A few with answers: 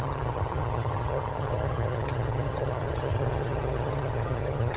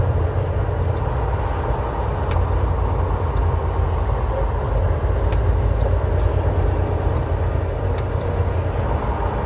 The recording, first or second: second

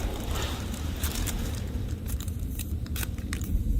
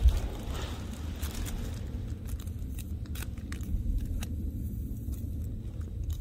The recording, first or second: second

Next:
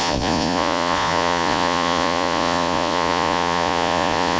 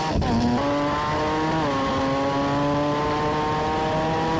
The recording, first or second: second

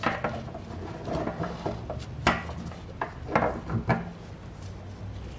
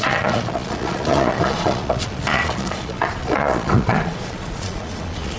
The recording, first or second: first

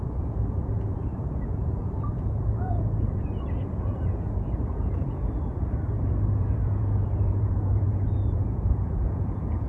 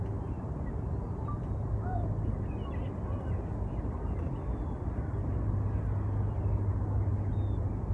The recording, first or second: second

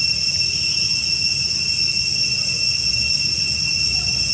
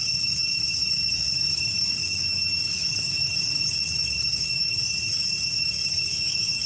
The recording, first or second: first